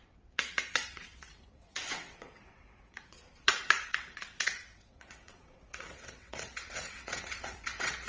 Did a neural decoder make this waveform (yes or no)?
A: yes